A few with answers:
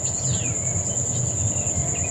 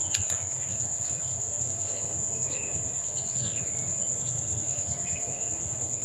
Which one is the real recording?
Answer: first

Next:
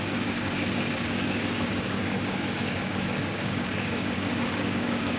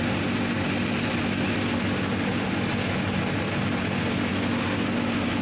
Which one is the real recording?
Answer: second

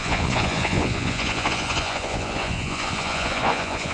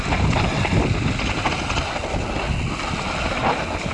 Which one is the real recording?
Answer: second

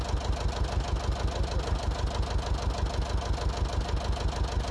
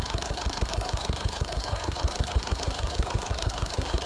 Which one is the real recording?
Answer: first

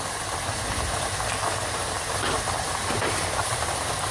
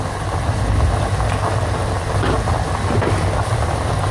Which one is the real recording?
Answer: second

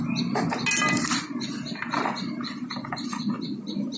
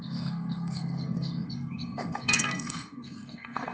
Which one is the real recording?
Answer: first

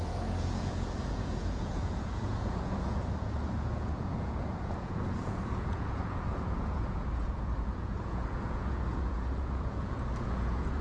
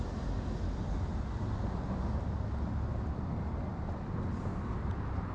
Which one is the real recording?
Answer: second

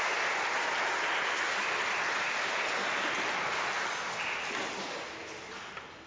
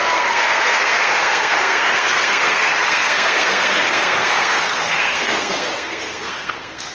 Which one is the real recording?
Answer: first